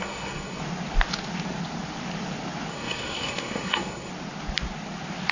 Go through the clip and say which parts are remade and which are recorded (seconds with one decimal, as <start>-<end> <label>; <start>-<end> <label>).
0.0-0.6 remade; 0.6-2.7 recorded; 2.7-4.1 remade; 4.1-5.3 recorded